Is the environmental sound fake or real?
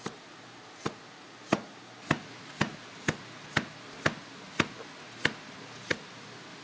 real